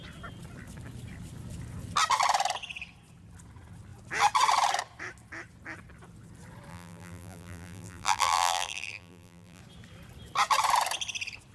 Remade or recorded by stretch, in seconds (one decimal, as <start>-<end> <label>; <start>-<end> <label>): 0.0-6.7 recorded; 6.7-9.6 remade; 9.6-11.5 recorded